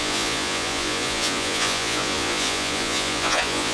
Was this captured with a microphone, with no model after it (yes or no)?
no